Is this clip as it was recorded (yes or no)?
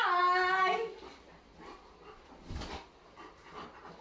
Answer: yes